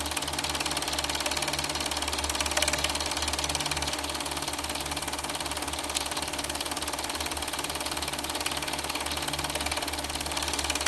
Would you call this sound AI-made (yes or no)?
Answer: no